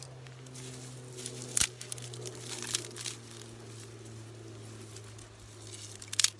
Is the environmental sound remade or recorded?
recorded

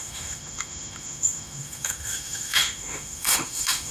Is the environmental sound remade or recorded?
remade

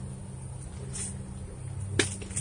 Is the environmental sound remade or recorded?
recorded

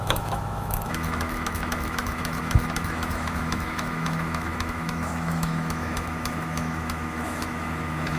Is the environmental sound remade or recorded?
remade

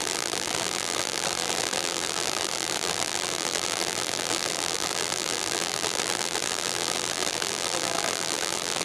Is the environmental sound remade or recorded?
remade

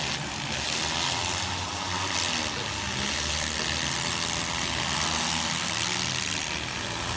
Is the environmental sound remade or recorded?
recorded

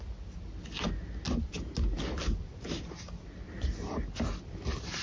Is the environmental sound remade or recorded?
recorded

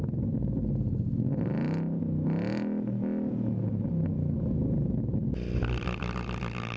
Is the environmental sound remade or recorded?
recorded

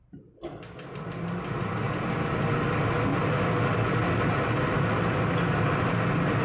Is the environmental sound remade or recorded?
recorded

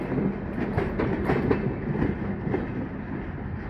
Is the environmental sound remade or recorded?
recorded